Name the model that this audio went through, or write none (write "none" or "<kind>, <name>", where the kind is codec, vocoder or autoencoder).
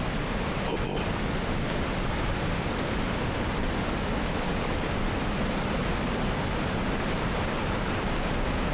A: none